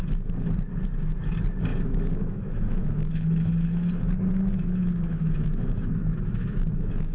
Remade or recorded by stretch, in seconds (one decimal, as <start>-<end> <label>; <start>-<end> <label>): 0.0-1.7 recorded; 1.7-3.9 remade; 3.9-4.3 recorded; 4.3-7.1 remade